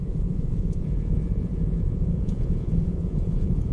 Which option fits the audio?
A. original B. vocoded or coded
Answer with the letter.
B